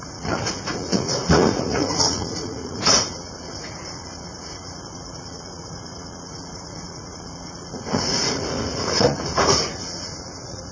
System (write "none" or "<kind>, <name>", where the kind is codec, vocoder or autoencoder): vocoder, Vocos